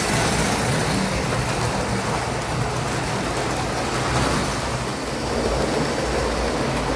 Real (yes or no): yes